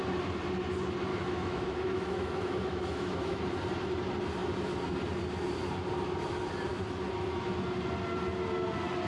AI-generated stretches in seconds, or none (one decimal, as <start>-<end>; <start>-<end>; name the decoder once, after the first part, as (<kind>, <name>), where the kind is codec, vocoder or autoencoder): 1.1-3.4 (autoencoder, DAC-VAE)